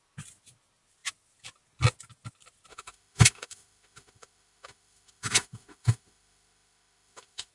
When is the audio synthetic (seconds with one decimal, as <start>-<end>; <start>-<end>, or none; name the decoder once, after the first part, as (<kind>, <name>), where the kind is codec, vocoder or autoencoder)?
2.7-7.5 (autoencoder, DAC-VAE)